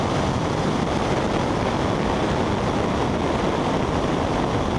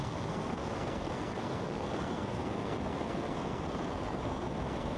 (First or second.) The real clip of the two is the first